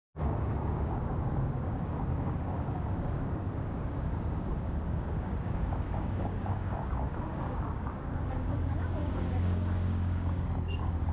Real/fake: fake